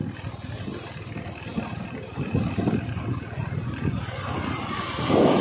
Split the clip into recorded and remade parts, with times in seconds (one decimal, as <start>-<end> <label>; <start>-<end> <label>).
0.0-5.4 recorded